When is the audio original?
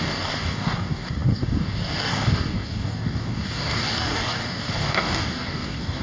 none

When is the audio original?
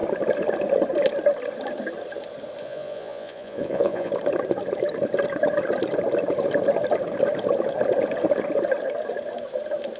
0.0-2.6; 4.1-10.0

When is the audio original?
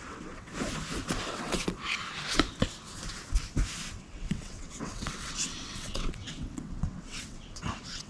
0.5-1.3; 1.9-3.9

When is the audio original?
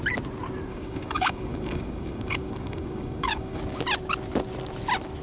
0.0-0.7; 3.6-5.2